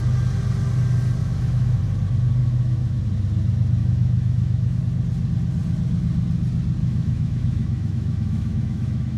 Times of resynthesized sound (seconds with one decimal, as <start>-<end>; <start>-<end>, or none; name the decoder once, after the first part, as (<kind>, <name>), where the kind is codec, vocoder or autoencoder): 1.2-1.8 (autoencoder, DAC-VAE); 2.4-3.0; 3.8-4.8; 6.8-9.2